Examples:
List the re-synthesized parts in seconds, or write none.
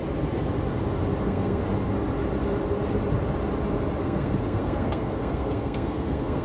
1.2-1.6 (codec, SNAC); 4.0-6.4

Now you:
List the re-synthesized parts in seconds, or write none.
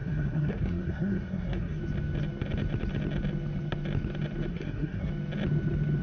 0.0-1.8 (codec, SNAC); 4.5-5.1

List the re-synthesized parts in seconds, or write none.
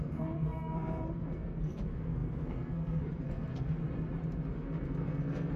0.0-3.8 (codec, SNAC); 4.5-5.6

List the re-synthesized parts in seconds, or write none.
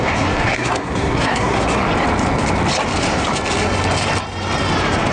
0.0-1.8 (codec, SNAC)